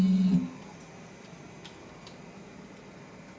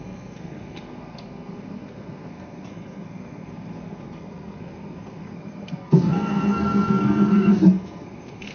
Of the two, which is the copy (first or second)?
second